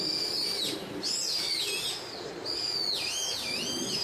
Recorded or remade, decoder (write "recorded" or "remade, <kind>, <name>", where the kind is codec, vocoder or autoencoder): recorded